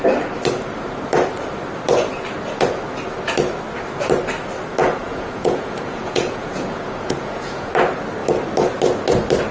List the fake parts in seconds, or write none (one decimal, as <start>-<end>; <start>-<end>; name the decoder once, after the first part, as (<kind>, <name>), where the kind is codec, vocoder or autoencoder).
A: 4.8-7.7 (vocoder, Vocos)